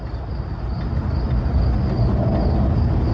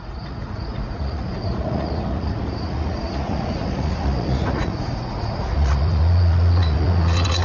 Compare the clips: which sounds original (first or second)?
first